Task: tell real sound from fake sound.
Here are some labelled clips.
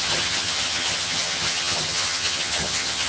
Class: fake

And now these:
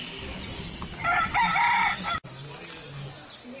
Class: real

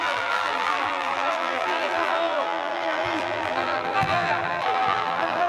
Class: fake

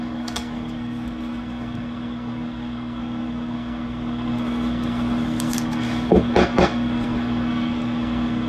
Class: fake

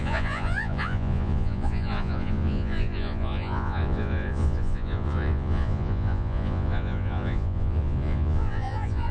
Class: fake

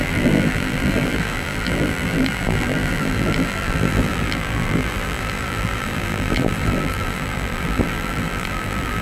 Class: fake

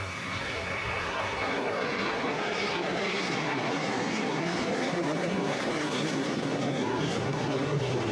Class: fake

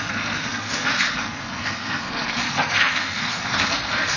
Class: fake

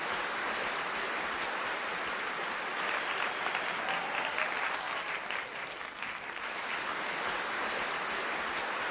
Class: real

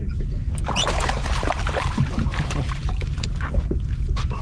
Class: fake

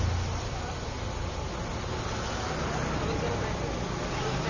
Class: real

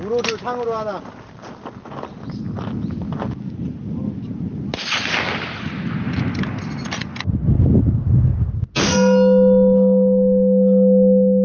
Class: real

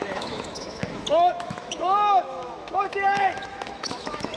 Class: fake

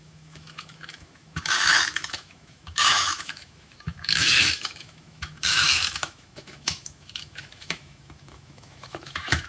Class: fake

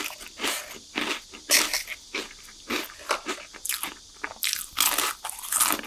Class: real